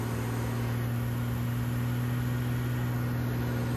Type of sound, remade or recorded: recorded